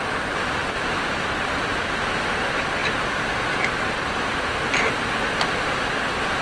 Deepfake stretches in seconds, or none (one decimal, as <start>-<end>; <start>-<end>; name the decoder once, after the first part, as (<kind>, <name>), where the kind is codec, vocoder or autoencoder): none